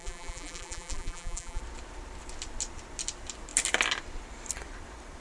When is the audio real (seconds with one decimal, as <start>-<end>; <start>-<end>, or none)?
1.6-5.2